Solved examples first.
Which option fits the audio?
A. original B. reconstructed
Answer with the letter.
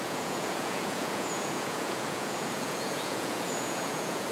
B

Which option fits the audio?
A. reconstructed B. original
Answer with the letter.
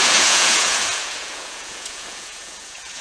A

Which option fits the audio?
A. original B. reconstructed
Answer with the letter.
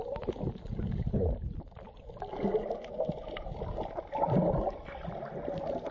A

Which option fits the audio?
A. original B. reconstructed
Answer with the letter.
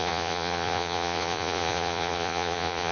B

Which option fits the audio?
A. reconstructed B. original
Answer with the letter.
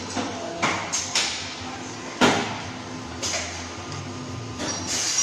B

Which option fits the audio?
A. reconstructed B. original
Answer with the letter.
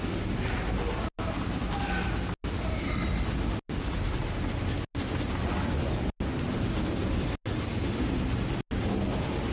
B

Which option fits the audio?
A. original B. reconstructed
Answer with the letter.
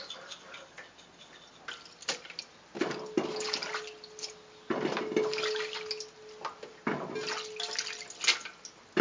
A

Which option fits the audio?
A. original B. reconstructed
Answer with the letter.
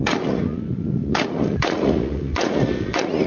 B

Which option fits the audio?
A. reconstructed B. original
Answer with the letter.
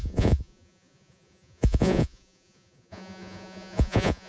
A